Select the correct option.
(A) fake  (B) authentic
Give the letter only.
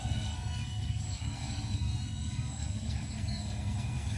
A